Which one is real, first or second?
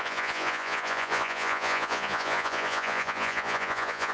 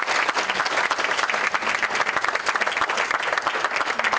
second